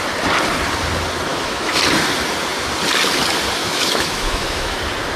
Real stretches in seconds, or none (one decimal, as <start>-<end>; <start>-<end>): 0.0-1.3; 1.8-3.6; 4.8-5.2